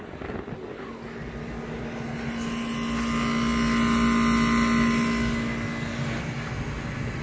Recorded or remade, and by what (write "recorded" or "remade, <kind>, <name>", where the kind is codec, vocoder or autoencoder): recorded